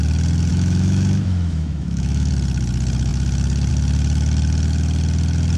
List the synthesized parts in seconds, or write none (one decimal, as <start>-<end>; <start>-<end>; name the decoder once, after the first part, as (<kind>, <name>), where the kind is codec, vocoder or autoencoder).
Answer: 0.5-2.3 (autoencoder, DAC-VAE)